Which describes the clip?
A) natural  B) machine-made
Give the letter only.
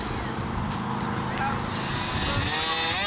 A